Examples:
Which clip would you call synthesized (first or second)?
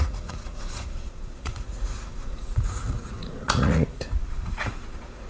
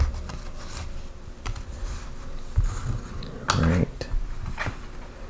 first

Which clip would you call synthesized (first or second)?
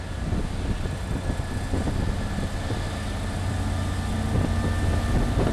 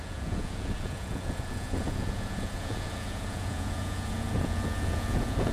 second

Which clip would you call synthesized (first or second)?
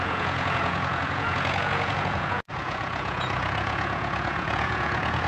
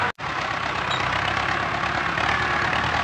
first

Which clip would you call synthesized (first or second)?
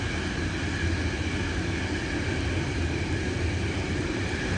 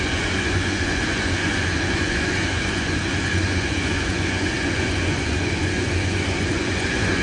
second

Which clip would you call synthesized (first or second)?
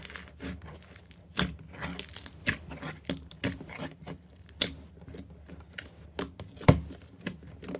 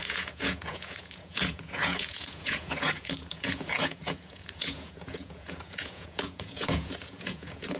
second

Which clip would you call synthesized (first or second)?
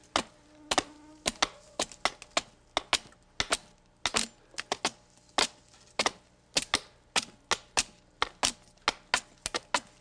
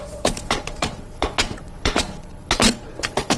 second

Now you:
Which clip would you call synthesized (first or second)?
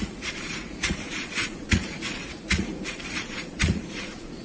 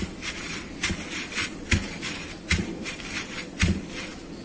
first